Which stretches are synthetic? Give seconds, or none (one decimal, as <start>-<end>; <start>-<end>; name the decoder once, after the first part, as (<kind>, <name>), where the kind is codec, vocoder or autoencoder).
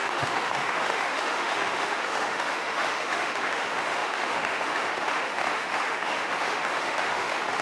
0.0-7.6 (autoencoder, DAC-VAE)